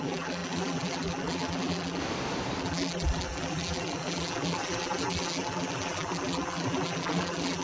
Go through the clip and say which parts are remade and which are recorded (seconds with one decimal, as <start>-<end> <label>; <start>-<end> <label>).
0.0-2.0 remade; 2.0-2.6 recorded; 2.6-7.6 remade

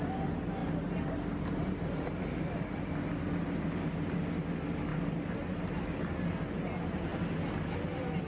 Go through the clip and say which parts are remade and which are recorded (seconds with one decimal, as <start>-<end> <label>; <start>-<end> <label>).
0.0-0.6 recorded; 0.6-2.8 remade; 2.8-4.9 recorded; 4.9-5.7 remade; 5.7-8.3 recorded

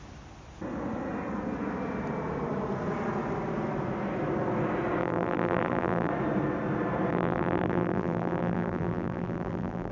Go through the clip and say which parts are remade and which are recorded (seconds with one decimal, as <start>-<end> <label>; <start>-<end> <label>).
0.0-5.0 recorded; 5.0-6.1 remade; 6.1-7.1 recorded; 7.1-9.9 remade

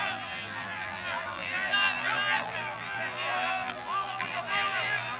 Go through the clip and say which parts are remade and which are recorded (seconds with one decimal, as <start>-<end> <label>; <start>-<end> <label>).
0.0-5.2 remade

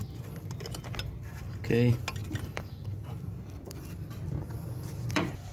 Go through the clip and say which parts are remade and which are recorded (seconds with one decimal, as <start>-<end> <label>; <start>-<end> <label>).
0.0-2.2 recorded; 2.2-5.5 remade